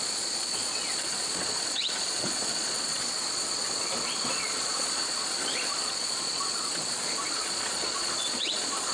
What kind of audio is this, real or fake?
fake